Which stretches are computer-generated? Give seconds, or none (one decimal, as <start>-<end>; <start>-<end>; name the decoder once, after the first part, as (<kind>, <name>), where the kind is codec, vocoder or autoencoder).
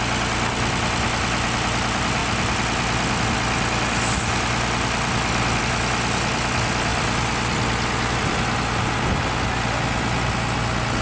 none